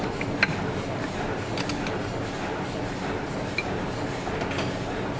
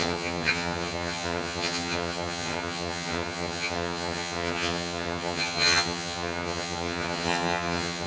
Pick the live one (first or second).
first